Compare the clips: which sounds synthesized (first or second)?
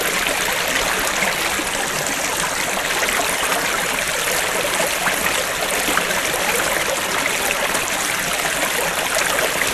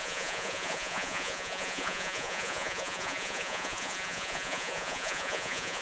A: second